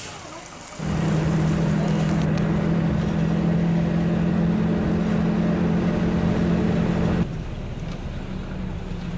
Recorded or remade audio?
recorded